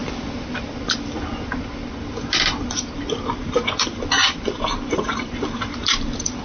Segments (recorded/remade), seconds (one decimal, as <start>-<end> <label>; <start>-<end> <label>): 0.0-3.3 recorded; 3.3-6.4 remade